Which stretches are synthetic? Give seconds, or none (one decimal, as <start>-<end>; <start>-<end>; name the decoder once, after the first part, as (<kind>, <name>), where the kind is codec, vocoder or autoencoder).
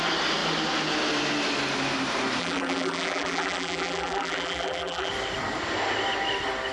2.4-5.1 (vocoder, BigVGAN v2)